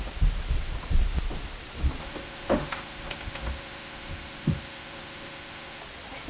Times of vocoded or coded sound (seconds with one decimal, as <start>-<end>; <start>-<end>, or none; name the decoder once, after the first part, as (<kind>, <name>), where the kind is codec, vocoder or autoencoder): 2.0-5.8 (autoencoder, DAC-VAE)